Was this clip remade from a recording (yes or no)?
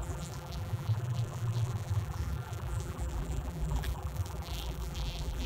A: yes